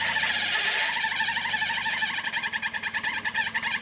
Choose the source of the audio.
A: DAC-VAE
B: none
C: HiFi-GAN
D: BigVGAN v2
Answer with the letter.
B